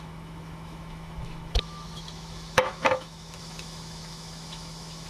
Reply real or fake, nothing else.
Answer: fake